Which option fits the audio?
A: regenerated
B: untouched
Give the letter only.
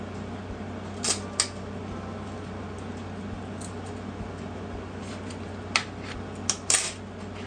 B